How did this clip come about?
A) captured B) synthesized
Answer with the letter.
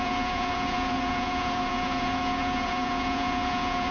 B